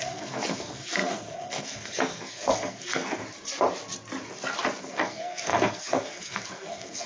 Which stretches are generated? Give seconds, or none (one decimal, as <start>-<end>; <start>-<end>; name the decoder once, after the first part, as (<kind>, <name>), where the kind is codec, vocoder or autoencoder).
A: 0.0-3.2 (codec, SNAC); 4.8-7.1